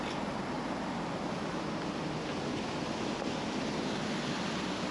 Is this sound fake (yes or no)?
no